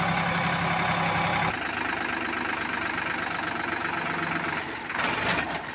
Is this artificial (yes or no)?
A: no